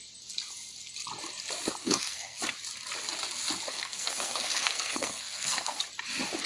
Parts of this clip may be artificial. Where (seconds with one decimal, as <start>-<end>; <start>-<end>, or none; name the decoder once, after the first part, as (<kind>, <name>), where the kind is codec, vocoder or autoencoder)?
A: 1.8-2.4 (codec, SNAC); 3.7-5.8